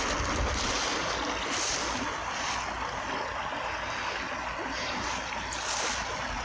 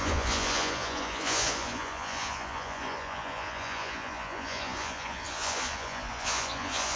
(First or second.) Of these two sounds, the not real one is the second